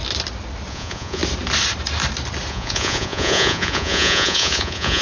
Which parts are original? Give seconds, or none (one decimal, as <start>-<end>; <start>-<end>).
0.0-0.7; 1.2-2.5